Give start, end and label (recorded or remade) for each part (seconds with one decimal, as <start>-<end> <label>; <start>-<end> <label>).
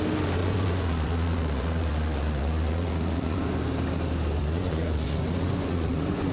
0.0-0.4 recorded; 0.4-3.4 remade; 3.4-4.4 recorded; 4.4-6.3 remade